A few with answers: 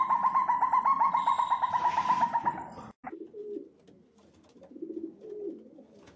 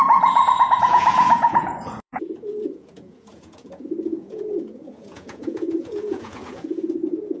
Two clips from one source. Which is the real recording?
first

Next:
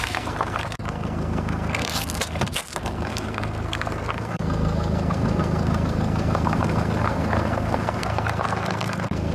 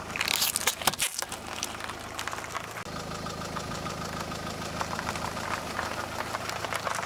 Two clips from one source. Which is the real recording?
second